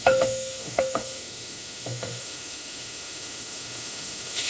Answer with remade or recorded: remade